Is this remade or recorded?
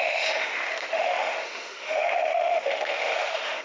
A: remade